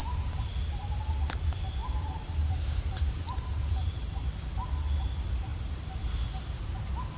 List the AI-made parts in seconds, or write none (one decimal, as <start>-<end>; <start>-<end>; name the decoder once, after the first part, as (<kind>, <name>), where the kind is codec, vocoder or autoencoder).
0.0-0.5 (vocoder, BigVGAN v2); 1.8-4.0